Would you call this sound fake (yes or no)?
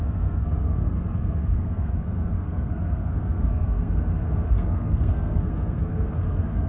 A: yes